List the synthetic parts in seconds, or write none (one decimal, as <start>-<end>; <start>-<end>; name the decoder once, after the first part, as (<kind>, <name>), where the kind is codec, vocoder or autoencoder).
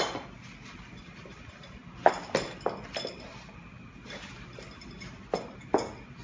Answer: none